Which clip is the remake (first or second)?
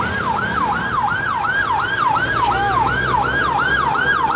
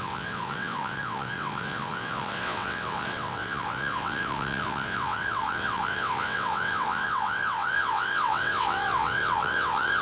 second